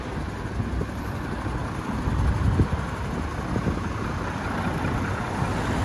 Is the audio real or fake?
real